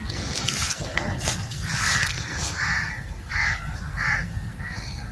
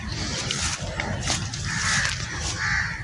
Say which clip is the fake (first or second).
first